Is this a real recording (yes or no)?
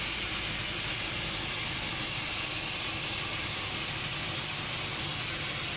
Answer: yes